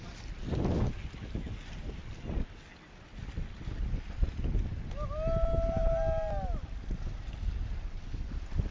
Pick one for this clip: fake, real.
real